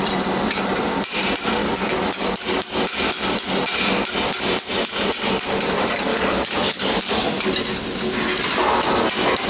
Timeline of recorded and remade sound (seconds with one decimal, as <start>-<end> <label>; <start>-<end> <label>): 0.0-1.6 recorded; 1.6-2.3 remade; 2.3-6.1 recorded; 6.1-7.5 remade; 7.5-9.5 recorded